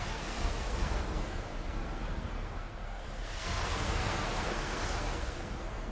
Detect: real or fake fake